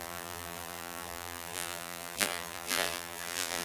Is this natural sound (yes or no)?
no